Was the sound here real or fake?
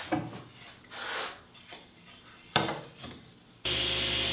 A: real